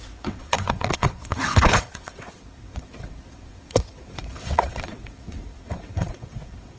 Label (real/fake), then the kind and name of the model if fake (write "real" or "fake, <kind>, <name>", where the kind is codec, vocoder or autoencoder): fake, vocoder, WaveNeXt